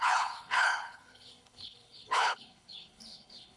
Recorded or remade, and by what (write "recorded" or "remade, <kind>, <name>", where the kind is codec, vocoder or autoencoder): remade, codec, HILCodec